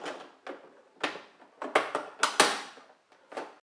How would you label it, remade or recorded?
recorded